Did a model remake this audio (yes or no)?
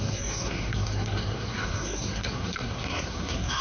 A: yes